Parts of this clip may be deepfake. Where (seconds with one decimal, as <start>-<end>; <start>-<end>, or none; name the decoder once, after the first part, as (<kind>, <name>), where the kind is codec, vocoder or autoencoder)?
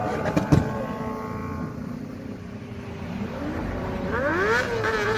none